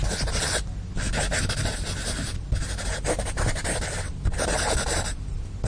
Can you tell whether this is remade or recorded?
recorded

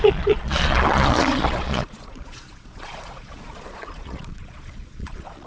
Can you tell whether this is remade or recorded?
remade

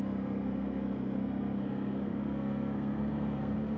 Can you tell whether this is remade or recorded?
remade